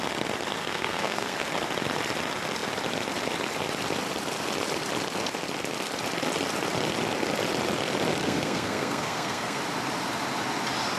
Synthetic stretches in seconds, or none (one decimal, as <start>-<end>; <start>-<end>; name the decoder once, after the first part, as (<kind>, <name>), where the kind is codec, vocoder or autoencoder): 0.6-1.5 (codec, SNAC); 8.2-9.6